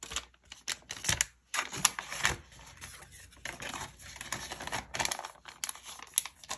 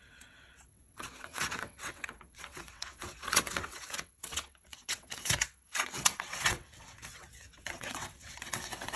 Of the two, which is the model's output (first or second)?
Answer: second